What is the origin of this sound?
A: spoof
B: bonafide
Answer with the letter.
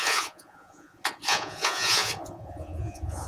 A